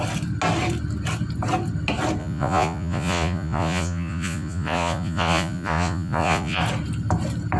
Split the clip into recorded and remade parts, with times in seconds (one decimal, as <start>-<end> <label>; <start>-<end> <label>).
0.0-2.2 recorded; 2.2-6.6 remade; 6.6-7.6 recorded